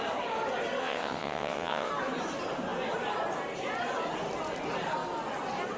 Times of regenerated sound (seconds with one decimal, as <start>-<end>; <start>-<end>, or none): 0.8-1.9